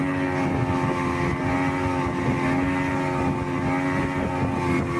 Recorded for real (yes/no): yes